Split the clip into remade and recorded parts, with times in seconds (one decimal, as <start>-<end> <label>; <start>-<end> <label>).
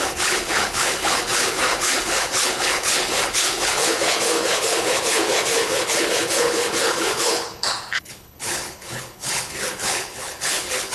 0.0-10.9 remade